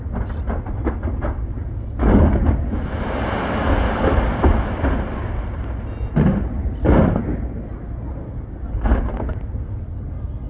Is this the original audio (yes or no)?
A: yes